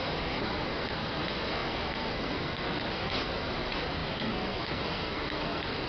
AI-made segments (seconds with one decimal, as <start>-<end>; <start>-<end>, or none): 0.0-5.9